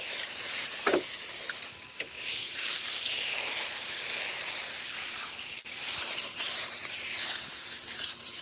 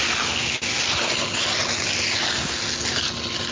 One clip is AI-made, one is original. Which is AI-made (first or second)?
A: first